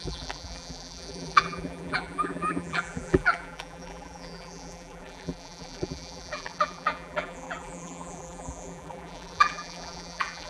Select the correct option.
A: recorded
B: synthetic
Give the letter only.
B